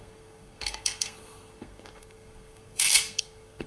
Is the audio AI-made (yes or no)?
yes